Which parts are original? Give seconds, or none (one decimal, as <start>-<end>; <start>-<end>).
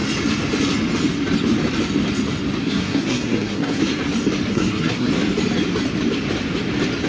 0.0-2.6; 3.8-4.5; 5.1-7.1